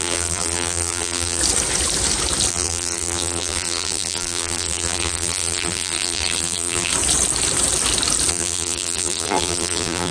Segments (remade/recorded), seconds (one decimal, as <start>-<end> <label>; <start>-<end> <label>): 0.0-1.4 remade; 1.4-2.5 recorded; 2.5-6.9 remade; 6.9-8.3 recorded; 8.3-10.1 remade